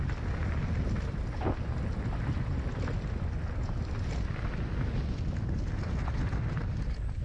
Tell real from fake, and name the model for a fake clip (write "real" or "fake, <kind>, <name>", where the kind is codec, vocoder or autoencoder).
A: real